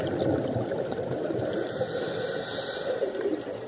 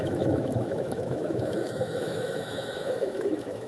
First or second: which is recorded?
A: first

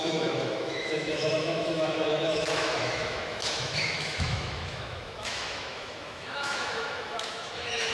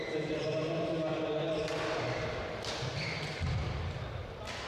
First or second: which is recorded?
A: second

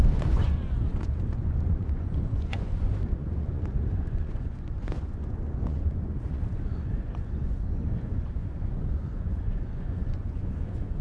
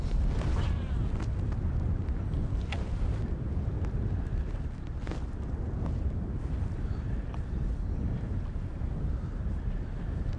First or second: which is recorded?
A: second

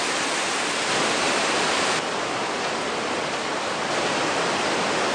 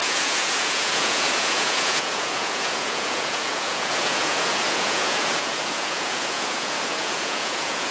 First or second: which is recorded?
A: first